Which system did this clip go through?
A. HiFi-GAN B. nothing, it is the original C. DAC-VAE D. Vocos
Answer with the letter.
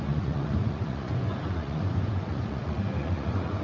D